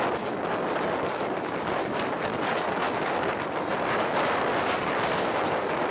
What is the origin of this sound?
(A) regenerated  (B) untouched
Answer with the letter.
B